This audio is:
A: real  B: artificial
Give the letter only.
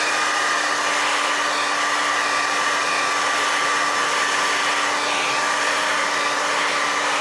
A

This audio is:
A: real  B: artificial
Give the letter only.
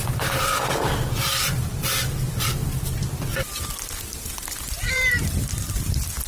B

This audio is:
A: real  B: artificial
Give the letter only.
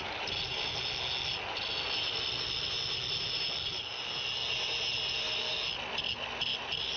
A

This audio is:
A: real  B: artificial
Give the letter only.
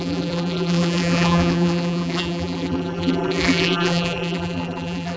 B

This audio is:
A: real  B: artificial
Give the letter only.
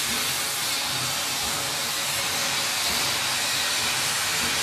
A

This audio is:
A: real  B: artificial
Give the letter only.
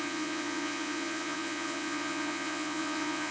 B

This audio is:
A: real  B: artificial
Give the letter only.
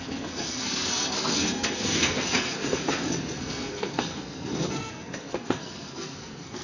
B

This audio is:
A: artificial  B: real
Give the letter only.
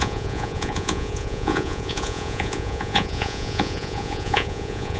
A